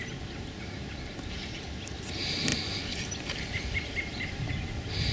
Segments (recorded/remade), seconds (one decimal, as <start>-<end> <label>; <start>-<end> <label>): 0.0-2.5 recorded; 2.5-4.5 remade; 4.5-5.1 recorded